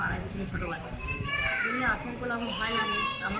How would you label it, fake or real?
fake